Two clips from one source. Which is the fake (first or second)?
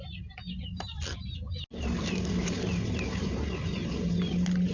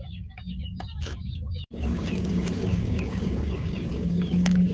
second